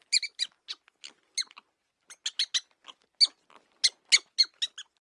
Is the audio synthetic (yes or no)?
no